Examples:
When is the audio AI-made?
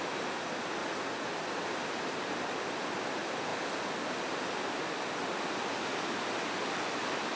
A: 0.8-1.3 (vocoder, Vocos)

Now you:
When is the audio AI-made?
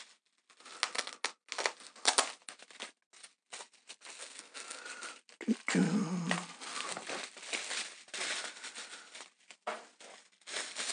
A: 4.2-4.8 (codec, SNAC)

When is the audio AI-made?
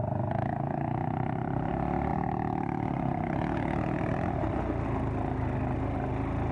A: 1.0-1.7 (vocoder, BigVGAN v2); 2.1-4.6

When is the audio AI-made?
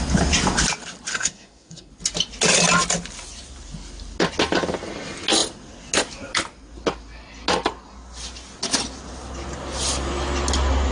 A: 1.1-1.9 (codec, SNAC)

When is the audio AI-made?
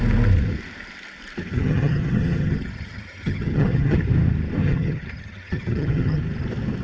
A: 1.5-4.0 (vocoder, HiFi-GAN); 4.6-6.2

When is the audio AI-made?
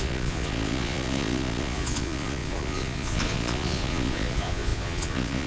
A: 0.0-5.5 (vocoder, Vocos)